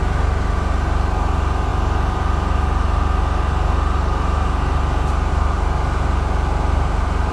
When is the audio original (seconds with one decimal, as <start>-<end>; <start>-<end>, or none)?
0.0-7.3